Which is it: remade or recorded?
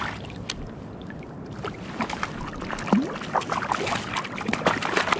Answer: recorded